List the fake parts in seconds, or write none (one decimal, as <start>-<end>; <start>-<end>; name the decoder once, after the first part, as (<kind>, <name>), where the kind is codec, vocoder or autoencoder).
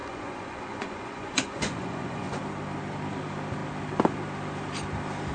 0.0-2.4 (vocoder, Vocos)